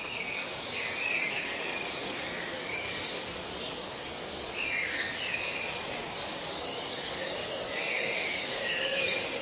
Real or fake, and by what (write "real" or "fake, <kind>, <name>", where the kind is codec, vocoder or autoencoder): fake, codec, DAC